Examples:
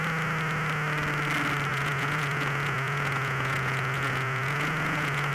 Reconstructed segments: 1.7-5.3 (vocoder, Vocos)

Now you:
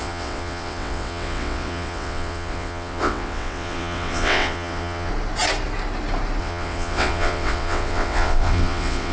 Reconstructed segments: 0.0-5.1 (vocoder, WaveNeXt); 6.4-9.1

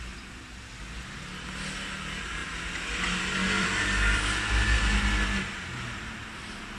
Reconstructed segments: 0.0-2.4 (vocoder, BigVGAN v2); 3.6-6.8

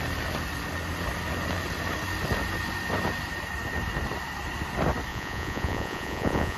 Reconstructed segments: 5.1-6.6 (vocoder, Vocos)

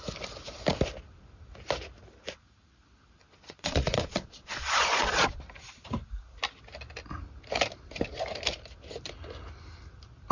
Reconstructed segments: 3.2-5.4 (vocoder, Vocos)

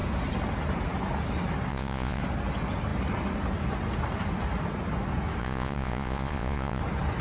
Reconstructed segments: 1.7-2.2 (vocoder, Vocos); 5.4-6.8

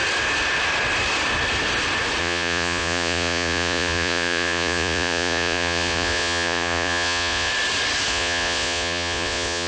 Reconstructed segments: 2.2-7.5 (vocoder, Vocos); 8.1-9.7

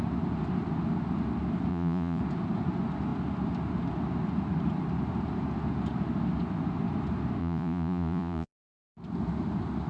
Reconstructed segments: 1.7-2.2 (vocoder, Vocos); 7.4-8.6